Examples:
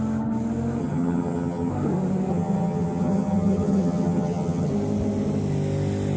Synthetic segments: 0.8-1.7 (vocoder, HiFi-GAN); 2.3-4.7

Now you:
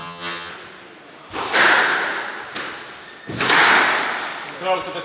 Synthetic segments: 0.0-0.5 (vocoder, HiFi-GAN)

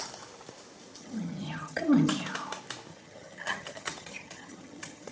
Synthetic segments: 1.0-2.1 (vocoder, HiFi-GAN); 2.9-5.1